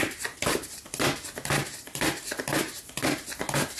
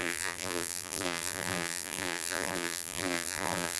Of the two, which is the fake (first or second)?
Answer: second